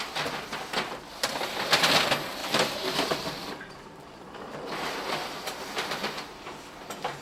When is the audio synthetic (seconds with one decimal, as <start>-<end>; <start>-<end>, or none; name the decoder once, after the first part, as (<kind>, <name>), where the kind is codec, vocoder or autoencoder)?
2.4-6.7 (vocoder, BigVGAN v2)